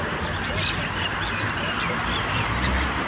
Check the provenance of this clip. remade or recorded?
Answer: recorded